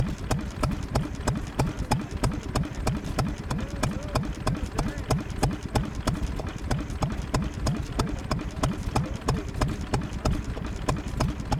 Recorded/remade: recorded